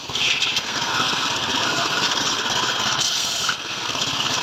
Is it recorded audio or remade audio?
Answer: remade